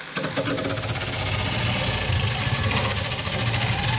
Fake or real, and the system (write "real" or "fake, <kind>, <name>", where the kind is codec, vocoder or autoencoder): real